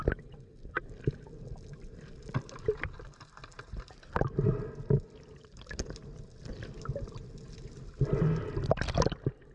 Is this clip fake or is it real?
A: real